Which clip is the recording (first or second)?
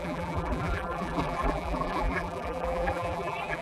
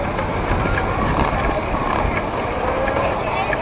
second